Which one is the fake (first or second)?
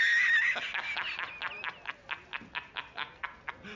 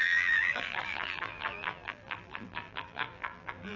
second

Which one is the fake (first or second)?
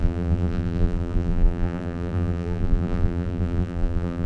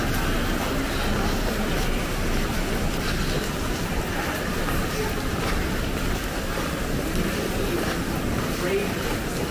first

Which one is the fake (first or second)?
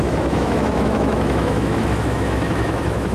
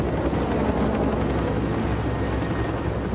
first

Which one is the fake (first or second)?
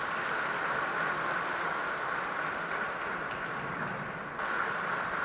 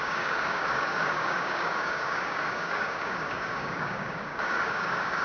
second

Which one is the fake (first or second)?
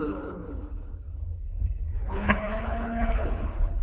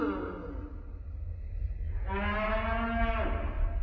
first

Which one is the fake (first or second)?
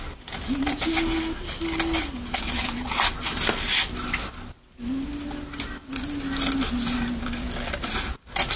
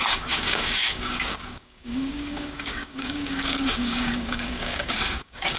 second